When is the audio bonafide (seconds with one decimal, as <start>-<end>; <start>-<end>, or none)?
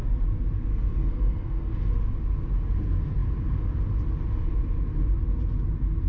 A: 0.0-0.7; 1.9-6.1